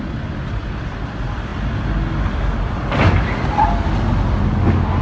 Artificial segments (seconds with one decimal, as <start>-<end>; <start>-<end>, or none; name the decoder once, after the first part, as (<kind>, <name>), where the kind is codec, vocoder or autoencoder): none